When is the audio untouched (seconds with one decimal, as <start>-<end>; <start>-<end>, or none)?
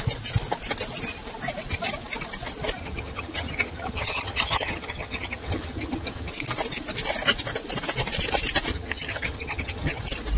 0.0-2.8; 6.3-8.7; 10.0-10.4